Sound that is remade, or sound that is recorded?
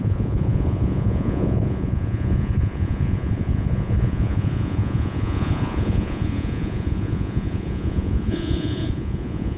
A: remade